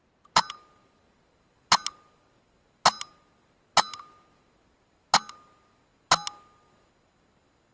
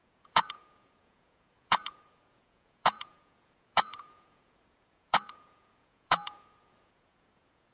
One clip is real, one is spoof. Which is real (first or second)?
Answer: first